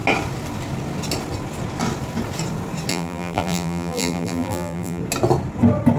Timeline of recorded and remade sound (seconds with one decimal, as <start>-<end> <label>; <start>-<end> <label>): 0.0-2.9 recorded; 2.9-5.0 remade; 5.0-6.0 recorded